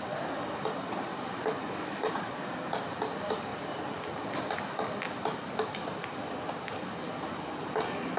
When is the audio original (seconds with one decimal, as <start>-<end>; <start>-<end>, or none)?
0.0-8.2